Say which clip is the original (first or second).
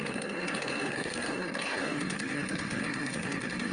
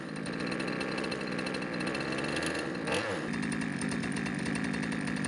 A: second